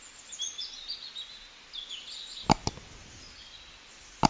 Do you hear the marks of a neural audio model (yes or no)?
no